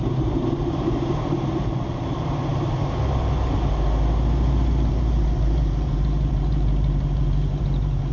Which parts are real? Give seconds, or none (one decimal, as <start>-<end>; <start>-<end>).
2.5-4.9